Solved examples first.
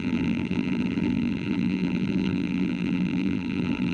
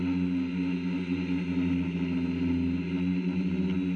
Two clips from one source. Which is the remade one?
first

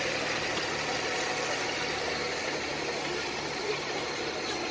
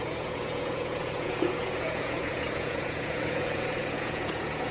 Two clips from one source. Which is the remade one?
second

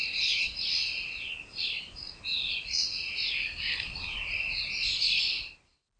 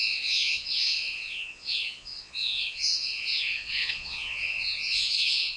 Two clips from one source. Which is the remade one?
second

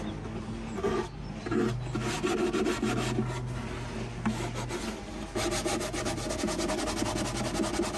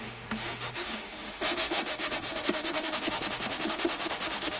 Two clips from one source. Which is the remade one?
second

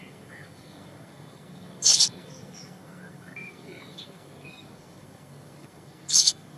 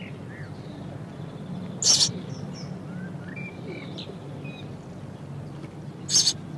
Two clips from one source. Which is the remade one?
first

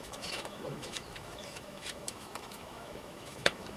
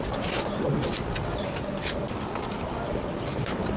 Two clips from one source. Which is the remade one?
first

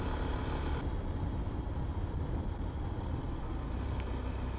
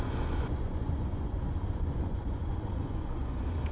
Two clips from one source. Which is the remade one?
second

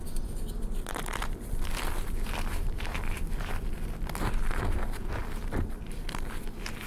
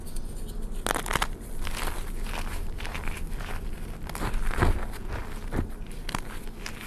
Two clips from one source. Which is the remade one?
first